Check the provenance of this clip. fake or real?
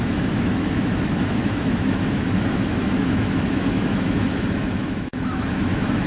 fake